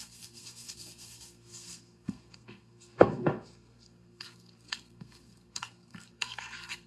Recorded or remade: remade